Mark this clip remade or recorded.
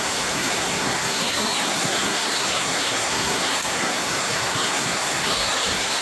remade